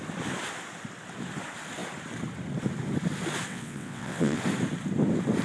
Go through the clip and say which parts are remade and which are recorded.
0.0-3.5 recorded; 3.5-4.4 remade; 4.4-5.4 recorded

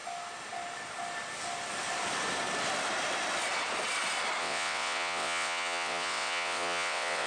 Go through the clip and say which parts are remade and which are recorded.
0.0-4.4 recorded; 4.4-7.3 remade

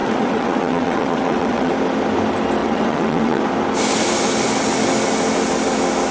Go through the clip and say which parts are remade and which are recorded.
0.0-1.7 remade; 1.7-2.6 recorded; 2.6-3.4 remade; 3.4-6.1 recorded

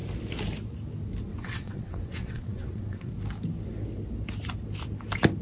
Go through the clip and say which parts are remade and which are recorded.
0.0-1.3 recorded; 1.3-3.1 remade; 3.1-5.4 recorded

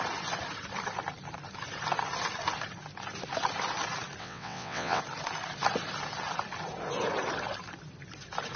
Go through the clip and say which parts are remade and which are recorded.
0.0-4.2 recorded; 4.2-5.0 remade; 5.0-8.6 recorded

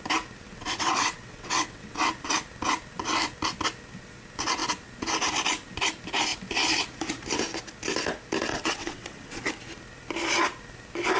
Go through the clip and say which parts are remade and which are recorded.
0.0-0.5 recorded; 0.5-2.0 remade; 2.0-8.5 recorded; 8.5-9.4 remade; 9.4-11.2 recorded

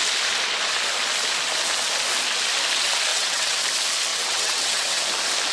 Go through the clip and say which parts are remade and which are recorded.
0.0-3.1 recorded; 3.1-3.6 remade; 3.6-4.1 recorded; 4.1-5.0 remade; 5.0-5.5 recorded

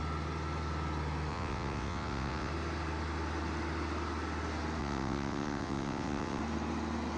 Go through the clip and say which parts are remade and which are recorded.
0.0-1.3 recorded; 1.3-2.5 remade; 2.5-4.8 recorded; 4.8-6.4 remade; 6.4-7.2 recorded